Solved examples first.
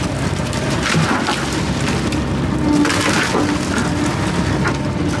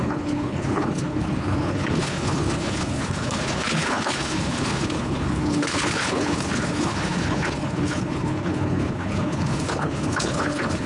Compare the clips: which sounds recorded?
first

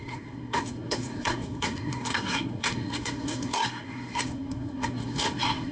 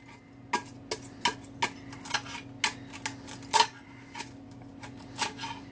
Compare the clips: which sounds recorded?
second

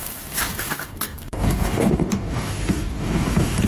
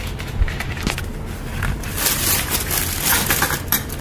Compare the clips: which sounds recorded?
second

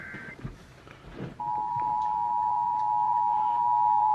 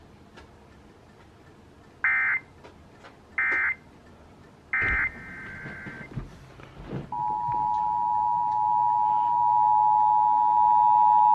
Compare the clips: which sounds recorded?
second